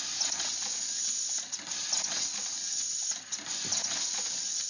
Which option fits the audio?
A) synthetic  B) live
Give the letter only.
B